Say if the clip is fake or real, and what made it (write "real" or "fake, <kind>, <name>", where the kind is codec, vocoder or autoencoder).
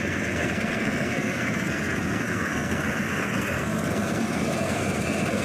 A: fake, codec, SNAC